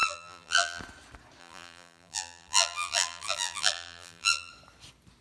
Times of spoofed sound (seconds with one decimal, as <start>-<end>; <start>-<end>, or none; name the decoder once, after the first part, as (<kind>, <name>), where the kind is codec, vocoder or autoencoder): 0.0-0.8 (vocoder, BigVGAN v2); 1.4-4.5